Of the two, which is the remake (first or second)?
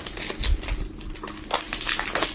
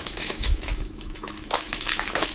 second